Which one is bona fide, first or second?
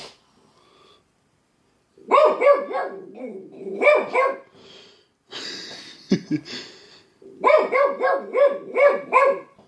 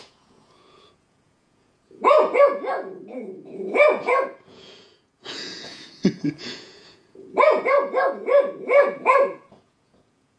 first